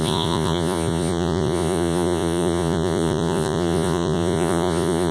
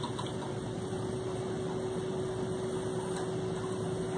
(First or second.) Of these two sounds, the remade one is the first